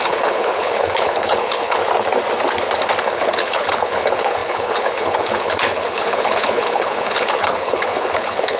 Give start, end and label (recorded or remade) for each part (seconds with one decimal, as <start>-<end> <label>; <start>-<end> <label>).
0.0-1.8 remade; 1.8-3.0 recorded; 3.0-8.6 remade